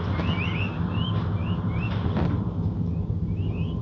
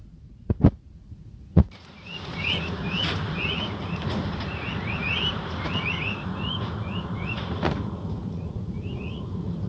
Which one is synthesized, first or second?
second